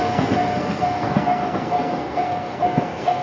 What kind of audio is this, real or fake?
fake